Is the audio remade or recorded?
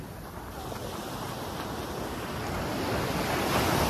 recorded